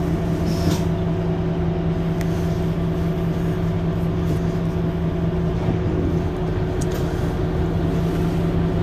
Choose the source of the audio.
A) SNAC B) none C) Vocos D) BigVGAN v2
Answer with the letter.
B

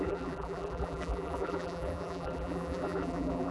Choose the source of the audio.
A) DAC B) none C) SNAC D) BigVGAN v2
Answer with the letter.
D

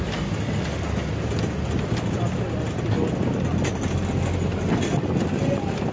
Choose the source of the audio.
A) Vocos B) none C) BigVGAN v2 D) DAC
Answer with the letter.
B